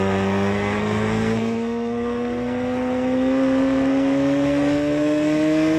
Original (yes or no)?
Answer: no